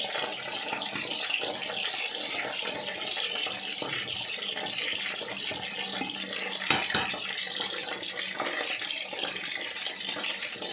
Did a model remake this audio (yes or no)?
no